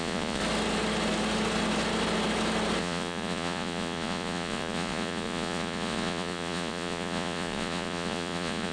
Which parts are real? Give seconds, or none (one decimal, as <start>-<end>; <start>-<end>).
0.4-2.8